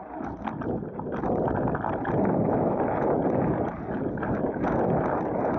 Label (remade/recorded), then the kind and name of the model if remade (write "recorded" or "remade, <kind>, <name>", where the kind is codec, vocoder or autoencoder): recorded